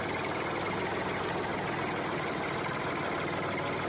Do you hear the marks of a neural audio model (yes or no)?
no